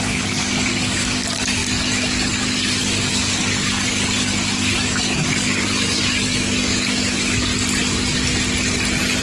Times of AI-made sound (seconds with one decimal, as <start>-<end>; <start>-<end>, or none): 0.0-7.5